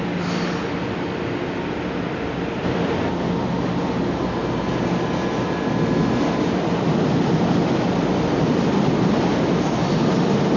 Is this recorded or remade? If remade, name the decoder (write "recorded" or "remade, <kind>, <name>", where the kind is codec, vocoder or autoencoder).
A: recorded